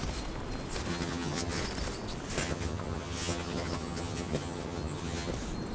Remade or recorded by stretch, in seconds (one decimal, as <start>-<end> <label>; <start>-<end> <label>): 0.0-0.9 recorded; 0.9-1.6 remade; 1.6-2.4 recorded; 2.4-5.3 remade; 5.3-5.7 recorded